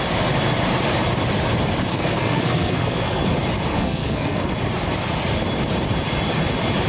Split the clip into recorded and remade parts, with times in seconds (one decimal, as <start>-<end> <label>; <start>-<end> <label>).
0.0-1.9 recorded; 1.9-3.2 remade; 3.2-3.7 recorded; 3.7-4.5 remade; 4.5-6.9 recorded